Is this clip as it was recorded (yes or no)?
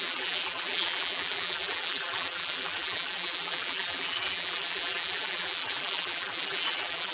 no